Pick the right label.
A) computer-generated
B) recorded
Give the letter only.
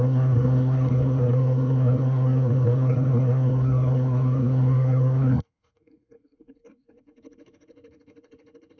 A